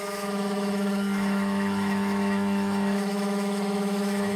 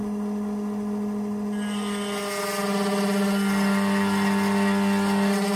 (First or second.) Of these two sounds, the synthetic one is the first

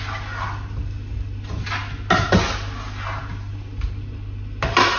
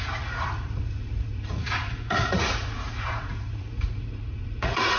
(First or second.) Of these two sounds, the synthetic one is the second